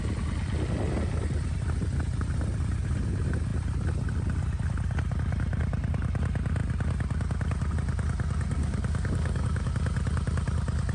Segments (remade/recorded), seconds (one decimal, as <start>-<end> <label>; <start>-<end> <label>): 0.0-8.6 recorded; 8.6-9.7 remade; 9.7-10.9 recorded